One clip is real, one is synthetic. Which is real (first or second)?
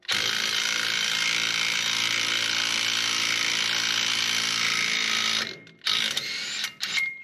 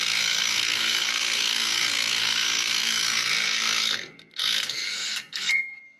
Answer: first